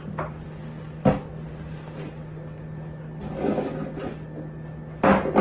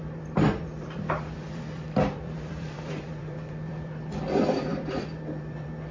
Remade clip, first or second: second